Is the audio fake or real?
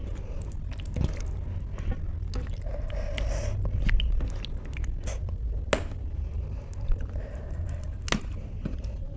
real